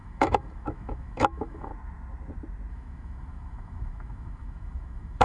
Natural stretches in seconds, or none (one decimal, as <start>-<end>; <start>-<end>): 1.7-2.7